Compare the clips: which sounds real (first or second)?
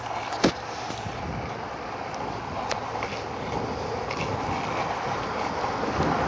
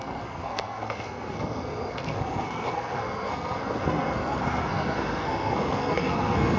first